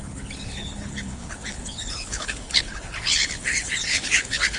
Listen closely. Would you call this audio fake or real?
fake